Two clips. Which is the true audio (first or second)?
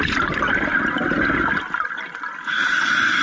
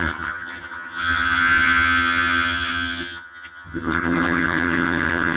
first